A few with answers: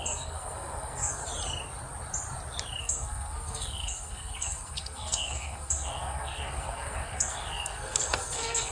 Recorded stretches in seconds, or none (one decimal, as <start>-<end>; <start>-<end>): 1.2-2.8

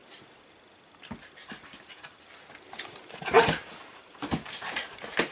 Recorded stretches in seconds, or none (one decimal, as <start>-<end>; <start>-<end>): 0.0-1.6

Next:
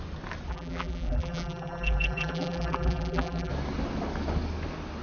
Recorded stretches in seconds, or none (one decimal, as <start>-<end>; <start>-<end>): 0.0-0.5; 3.5-5.0

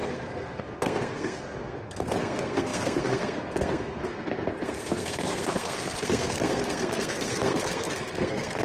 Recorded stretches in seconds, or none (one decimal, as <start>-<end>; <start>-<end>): none

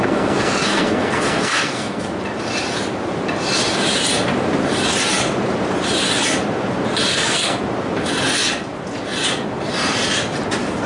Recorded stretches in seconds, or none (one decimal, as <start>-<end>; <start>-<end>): 2.1-7.1; 7.6-10.9

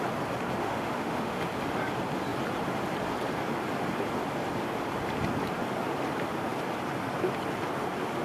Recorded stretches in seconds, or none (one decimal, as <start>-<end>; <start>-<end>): 0.0-0.6; 1.4-8.2

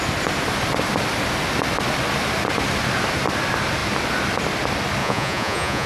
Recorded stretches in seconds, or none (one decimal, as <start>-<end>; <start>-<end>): 0.0-5.0

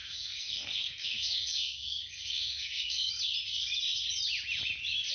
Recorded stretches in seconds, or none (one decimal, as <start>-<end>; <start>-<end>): 3.1-5.1